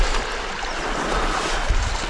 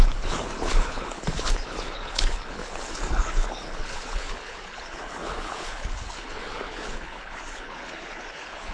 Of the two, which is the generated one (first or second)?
second